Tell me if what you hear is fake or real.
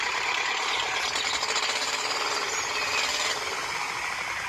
real